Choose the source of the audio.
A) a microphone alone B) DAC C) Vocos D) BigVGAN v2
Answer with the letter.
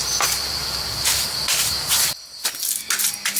A